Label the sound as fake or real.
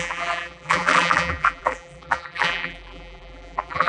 fake